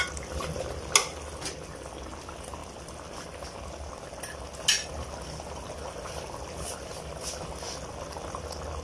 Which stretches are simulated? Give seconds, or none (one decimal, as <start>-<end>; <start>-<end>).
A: none